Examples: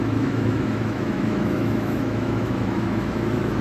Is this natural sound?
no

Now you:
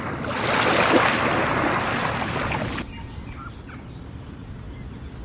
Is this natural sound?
yes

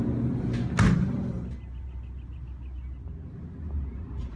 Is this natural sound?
yes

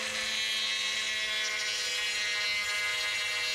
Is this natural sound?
yes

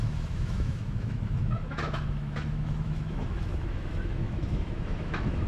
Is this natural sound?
no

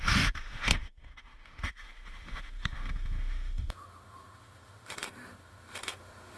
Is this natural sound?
no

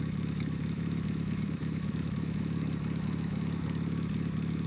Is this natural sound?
no